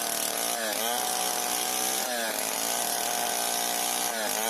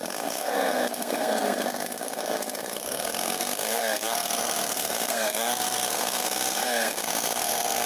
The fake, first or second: second